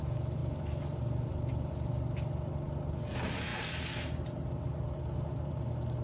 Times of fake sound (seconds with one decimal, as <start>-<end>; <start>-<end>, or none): none